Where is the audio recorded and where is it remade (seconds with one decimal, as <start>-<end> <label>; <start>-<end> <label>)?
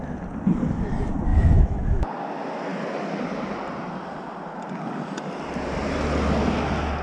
0.0-1.3 recorded; 1.3-2.0 remade; 2.0-7.0 recorded